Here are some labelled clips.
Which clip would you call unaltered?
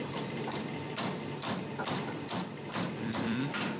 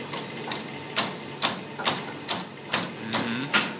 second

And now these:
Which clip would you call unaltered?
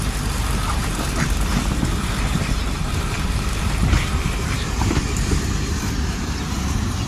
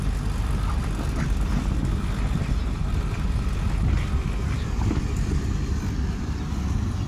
second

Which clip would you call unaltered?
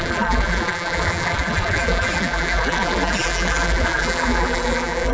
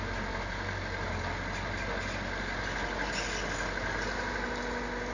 second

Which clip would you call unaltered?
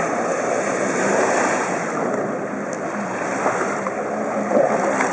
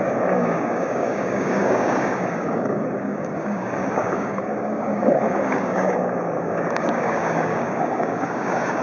first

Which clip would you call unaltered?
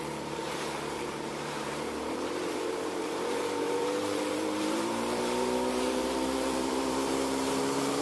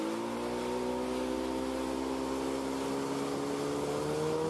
second